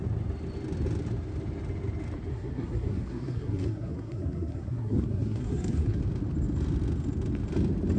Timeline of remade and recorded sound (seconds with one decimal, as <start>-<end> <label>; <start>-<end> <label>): 0.0-2.3 recorded; 2.3-6.0 remade; 6.0-8.0 recorded